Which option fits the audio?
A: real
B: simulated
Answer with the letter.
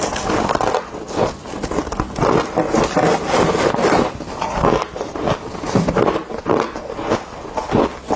A